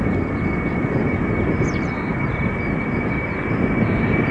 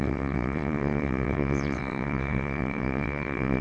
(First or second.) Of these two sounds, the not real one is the second